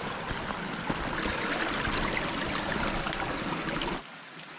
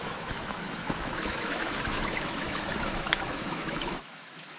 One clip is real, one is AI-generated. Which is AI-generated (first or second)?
second